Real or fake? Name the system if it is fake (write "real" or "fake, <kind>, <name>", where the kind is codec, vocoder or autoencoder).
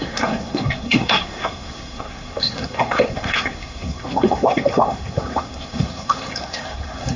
fake, codec, SNAC